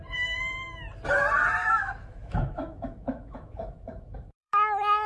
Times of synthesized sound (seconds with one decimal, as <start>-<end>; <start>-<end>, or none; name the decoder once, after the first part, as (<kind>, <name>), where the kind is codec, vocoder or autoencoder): 1.6-5.1 (autoencoder, DAC-VAE)